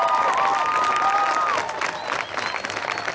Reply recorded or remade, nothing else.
recorded